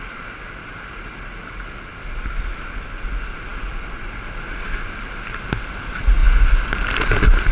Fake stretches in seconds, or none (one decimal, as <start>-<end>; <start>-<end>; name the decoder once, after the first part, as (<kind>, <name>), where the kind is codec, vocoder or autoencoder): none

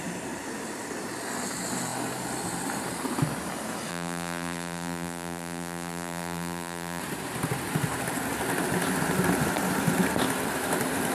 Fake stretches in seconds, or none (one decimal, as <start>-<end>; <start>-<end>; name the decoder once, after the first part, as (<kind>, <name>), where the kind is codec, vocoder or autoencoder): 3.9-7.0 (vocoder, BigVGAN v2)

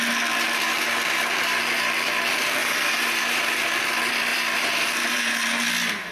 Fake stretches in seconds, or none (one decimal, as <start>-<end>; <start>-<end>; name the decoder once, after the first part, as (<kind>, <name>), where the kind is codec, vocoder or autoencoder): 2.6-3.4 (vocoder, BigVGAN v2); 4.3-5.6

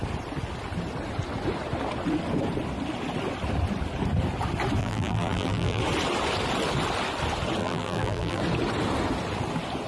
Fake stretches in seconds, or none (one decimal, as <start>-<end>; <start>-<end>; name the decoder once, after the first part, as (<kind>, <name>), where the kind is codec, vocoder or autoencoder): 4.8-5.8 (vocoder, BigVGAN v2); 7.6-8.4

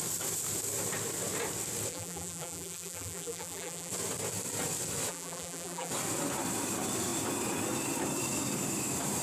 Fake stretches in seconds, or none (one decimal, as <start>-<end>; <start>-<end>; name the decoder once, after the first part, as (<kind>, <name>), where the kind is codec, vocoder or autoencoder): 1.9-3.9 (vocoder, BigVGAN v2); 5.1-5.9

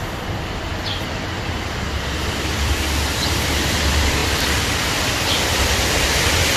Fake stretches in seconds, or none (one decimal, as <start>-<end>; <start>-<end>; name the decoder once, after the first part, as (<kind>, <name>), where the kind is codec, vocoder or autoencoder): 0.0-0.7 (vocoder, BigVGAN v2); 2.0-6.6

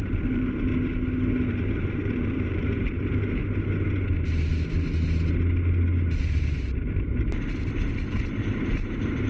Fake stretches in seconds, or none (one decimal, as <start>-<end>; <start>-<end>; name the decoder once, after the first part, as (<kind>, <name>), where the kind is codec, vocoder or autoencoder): 0.0-0.7 (vocoder, BigVGAN v2); 1.5-3.4; 6.2-9.3